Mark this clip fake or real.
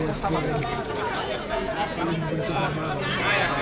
fake